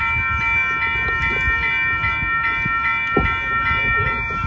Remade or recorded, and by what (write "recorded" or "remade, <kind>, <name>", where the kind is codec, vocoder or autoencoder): recorded